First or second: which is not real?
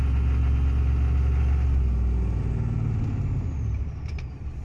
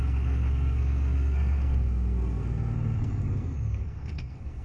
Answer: second